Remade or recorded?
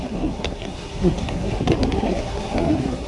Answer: remade